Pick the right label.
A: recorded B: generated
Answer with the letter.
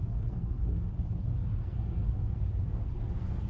B